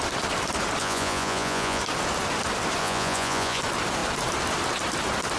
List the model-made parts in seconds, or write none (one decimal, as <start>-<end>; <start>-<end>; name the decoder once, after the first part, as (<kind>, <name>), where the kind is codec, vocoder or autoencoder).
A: 0.8-1.8 (vocoder, Vocos); 2.8-3.6